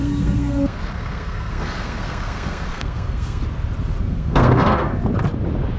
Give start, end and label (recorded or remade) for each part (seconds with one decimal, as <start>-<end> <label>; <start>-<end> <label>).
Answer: 0.0-3.4 remade; 3.4-4.0 recorded; 4.0-4.9 remade; 4.9-5.8 recorded